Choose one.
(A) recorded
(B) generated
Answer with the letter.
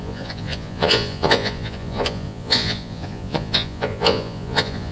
B